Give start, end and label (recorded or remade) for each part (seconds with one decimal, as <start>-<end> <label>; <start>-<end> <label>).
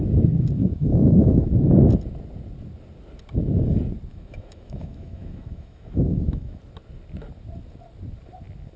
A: 0.0-0.6 recorded; 0.6-1.5 remade; 1.5-4.1 recorded; 4.1-6.6 remade; 6.6-8.8 recorded